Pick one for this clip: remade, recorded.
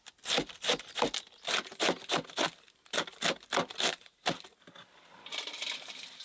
recorded